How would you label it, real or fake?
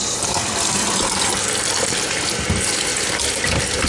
real